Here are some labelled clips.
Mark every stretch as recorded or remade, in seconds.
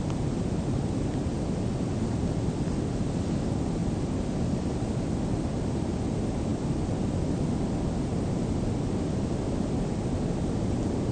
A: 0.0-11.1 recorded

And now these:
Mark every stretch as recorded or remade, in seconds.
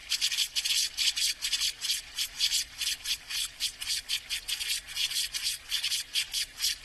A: 0.0-6.8 recorded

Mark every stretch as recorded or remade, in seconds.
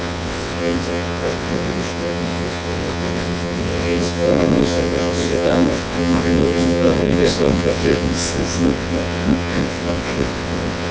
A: 0.0-10.9 remade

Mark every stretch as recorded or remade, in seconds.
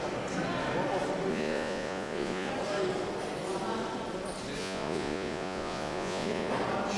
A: 0.0-1.3 recorded; 1.3-2.5 remade; 2.5-4.6 recorded; 4.6-6.5 remade; 6.5-7.0 recorded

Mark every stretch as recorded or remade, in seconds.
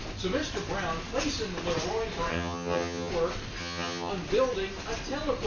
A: 0.0-2.3 recorded; 2.3-3.1 remade; 3.1-3.6 recorded; 3.6-4.1 remade; 4.1-5.5 recorded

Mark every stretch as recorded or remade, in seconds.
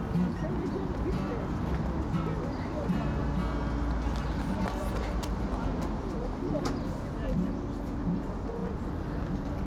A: 0.0-1.3 remade; 1.3-2.5 recorded; 2.5-3.2 remade; 3.2-6.0 recorded; 6.0-9.7 remade